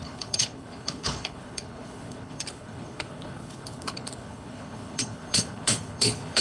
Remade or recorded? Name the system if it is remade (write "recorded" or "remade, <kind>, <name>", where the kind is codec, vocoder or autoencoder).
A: remade, codec, HILCodec